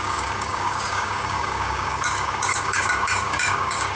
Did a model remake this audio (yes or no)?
yes